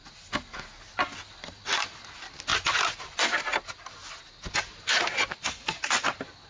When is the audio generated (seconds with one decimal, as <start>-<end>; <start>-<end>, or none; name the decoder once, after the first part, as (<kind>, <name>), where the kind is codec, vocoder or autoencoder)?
none